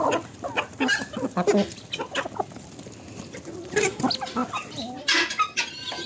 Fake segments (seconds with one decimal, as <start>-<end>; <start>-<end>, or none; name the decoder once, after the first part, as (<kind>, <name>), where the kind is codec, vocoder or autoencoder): none